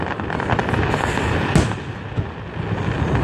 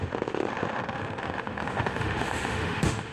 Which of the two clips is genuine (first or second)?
first